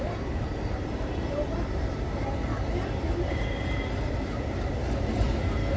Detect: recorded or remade remade